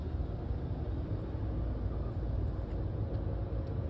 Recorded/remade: recorded